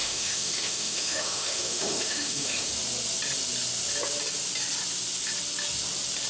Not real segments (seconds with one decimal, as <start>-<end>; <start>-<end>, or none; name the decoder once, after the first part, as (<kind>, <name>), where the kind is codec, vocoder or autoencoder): 0.0-2.7 (autoencoder, DAC-VAE)